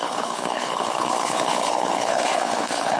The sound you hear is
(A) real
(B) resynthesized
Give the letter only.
B